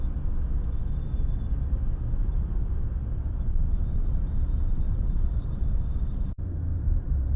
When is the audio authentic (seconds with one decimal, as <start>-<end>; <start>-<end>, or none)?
0.0-2.2; 5.9-6.7